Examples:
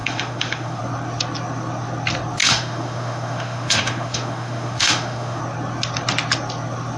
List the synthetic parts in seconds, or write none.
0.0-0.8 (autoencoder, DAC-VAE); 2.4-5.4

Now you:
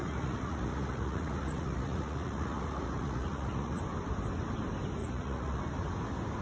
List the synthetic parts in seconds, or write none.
0.0-3.8 (vocoder, Vocos); 5.0-5.6

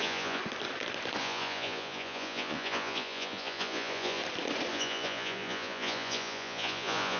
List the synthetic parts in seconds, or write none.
0.0-0.4 (vocoder, Vocos); 1.2-4.2; 4.7-7.2

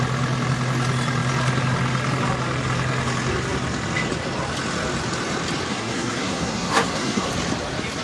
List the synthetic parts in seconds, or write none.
5.7-7.3 (codec, SNAC)

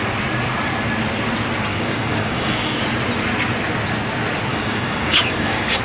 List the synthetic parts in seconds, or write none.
1.7-2.8 (codec, DAC); 4.5-5.8

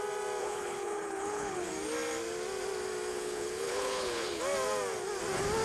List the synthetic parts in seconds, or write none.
0.4-1.7 (codec, HILCodec); 3.1-4.4